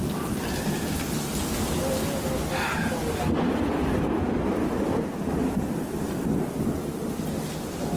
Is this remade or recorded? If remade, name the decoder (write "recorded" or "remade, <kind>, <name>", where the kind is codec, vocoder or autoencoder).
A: recorded